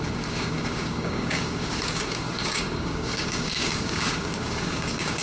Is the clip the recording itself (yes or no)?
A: no